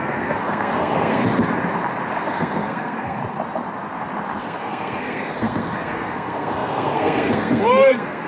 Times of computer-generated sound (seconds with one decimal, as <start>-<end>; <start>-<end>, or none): 0.0-1.2; 2.2-3.2; 4.4-8.3